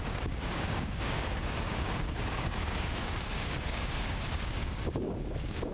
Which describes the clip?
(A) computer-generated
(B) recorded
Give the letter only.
A